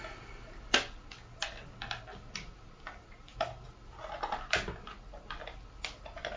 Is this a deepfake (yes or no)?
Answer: no